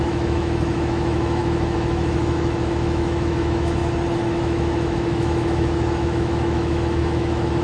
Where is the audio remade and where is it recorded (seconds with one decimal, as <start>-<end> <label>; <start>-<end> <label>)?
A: 0.0-3.8 remade; 3.8-4.3 recorded; 4.3-7.6 remade